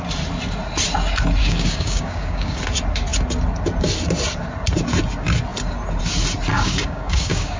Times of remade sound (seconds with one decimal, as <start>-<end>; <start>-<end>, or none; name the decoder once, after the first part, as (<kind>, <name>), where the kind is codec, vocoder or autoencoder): 1.4-2.6 (codec, DAC); 6.5-7.6